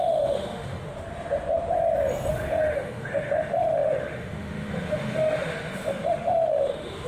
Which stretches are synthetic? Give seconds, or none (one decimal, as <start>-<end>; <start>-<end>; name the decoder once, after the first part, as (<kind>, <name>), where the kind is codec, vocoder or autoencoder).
0.0-0.9 (autoencoder, DAC-VAE); 2.3-7.1